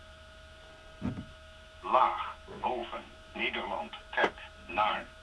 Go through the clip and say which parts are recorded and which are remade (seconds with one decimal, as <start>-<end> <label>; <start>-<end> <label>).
0.0-0.7 remade; 0.7-1.2 recorded; 1.2-5.2 remade